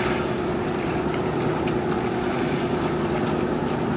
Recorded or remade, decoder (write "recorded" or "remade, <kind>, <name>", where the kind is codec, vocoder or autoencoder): recorded